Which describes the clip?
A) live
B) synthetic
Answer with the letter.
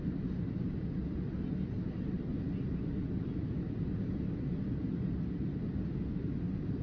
A